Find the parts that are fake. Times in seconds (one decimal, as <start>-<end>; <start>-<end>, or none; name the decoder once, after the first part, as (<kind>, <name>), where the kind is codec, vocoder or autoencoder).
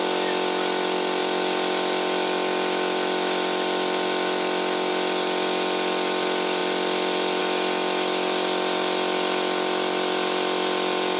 none